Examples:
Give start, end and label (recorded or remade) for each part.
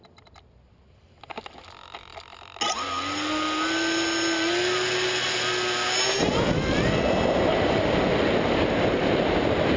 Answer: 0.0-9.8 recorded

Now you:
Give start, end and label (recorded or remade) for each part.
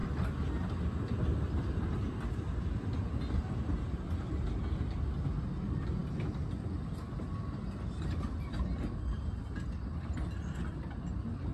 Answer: 0.0-11.5 recorded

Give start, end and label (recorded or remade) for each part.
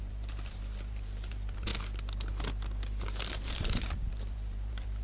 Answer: 0.0-1.7 remade; 1.7-3.3 recorded; 3.3-5.0 remade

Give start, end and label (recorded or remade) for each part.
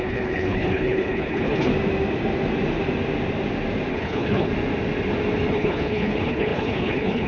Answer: 0.0-1.7 remade; 1.7-3.9 recorded; 3.9-4.5 remade; 4.5-5.5 recorded; 5.5-7.3 remade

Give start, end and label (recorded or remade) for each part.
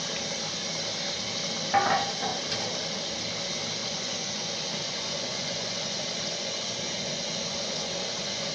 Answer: 0.0-3.8 recorded; 3.8-8.5 remade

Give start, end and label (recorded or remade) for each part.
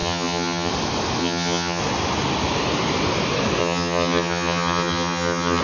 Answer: 0.0-0.7 remade; 0.7-1.2 recorded; 1.2-1.8 remade; 1.8-3.6 recorded; 3.6-5.6 remade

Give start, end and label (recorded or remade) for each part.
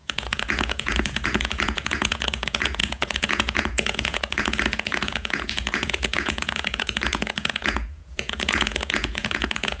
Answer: 0.0-9.8 remade